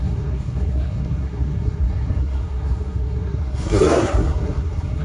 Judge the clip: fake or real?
fake